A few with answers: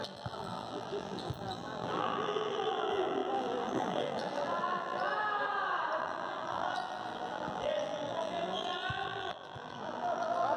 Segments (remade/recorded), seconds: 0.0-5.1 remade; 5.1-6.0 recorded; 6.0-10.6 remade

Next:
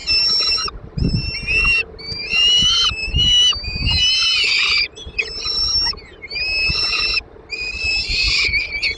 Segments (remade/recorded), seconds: 0.0-9.0 recorded

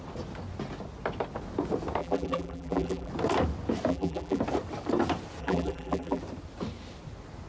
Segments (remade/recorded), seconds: 0.0-2.0 recorded; 2.0-3.1 remade; 3.1-3.9 recorded; 3.9-4.4 remade; 4.4-5.4 recorded; 5.4-6.2 remade; 6.2-7.5 recorded

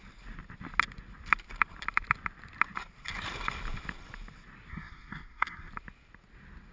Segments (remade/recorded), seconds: 0.0-4.7 recorded; 4.7-5.7 remade; 5.7-6.7 recorded

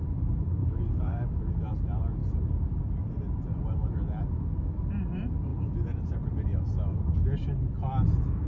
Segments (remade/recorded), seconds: 0.0-0.6 recorded; 0.6-1.4 remade; 1.4-8.5 recorded